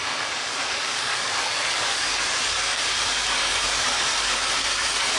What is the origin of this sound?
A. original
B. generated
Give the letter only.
B